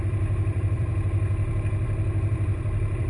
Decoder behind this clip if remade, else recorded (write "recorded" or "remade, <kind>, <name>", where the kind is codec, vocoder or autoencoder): remade, vocoder, BigVGAN v2